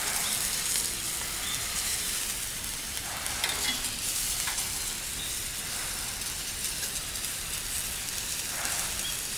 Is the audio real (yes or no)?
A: yes